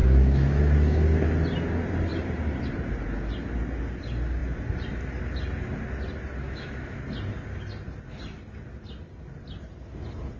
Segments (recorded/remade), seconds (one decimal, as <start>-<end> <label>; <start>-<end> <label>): 0.0-0.6 remade; 0.6-6.4 recorded; 6.4-7.0 remade; 7.0-10.4 recorded